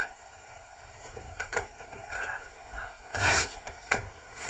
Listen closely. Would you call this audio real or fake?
fake